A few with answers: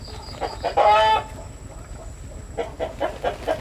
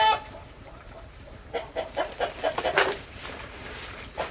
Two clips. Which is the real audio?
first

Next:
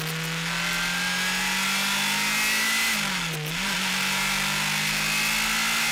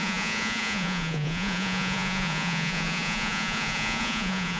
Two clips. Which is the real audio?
first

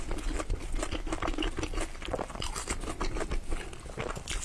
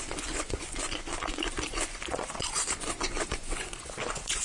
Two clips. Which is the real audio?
first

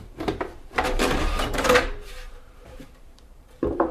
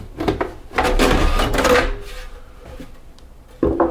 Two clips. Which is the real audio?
second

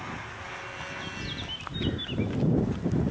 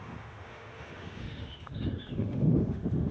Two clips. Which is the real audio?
first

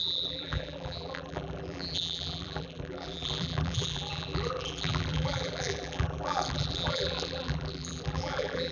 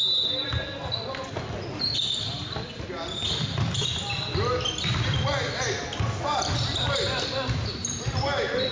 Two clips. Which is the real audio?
second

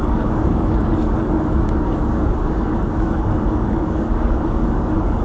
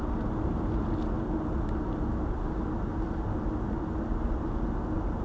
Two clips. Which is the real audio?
second